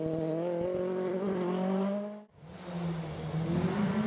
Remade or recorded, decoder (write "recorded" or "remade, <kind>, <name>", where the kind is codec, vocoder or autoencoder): recorded